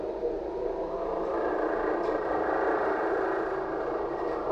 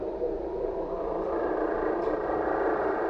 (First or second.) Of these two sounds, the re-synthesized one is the second